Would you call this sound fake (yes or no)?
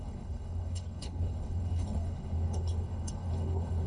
yes